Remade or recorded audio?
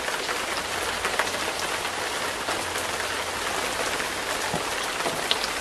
recorded